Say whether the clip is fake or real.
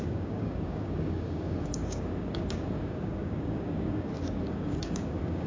fake